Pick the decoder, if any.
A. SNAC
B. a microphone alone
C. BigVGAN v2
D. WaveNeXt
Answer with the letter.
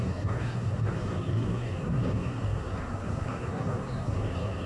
A